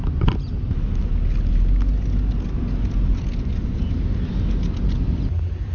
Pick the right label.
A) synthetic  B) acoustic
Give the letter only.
B